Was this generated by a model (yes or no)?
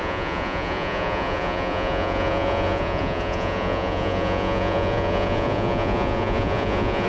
yes